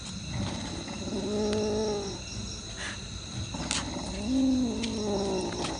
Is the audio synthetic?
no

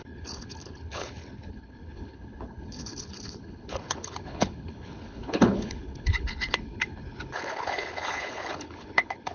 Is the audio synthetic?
yes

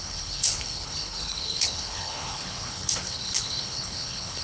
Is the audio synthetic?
yes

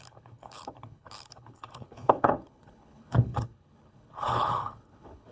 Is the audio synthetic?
yes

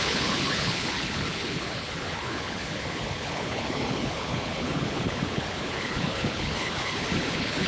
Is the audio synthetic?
yes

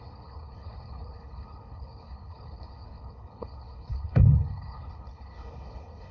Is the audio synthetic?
yes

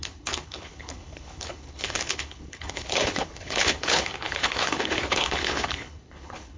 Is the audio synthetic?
yes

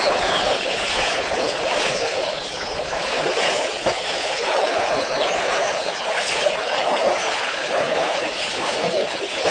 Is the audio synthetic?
yes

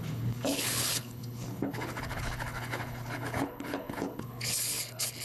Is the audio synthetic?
yes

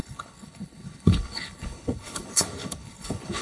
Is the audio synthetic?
yes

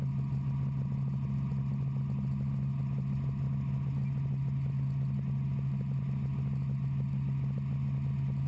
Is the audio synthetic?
no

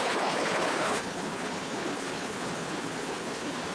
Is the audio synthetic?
yes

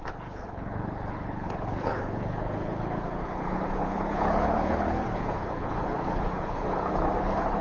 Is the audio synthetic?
yes